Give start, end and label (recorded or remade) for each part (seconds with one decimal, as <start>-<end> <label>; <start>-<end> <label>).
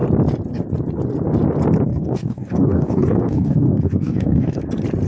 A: 0.0-1.9 recorded; 1.9-4.6 remade; 4.6-5.1 recorded